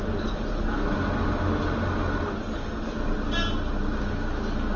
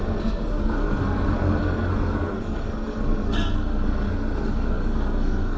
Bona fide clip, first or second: first